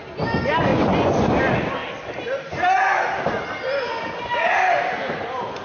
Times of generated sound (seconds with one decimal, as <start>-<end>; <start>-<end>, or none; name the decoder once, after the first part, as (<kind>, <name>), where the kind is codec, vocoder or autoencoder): 0.7-1.2 (vocoder, Vocos)